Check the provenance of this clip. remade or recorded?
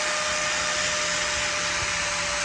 recorded